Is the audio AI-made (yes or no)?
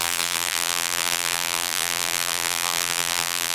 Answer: yes